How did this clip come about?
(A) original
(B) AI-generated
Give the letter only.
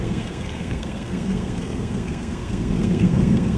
B